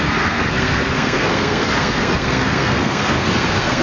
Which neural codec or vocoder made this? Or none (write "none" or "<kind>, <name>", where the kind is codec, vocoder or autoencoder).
codec, SNAC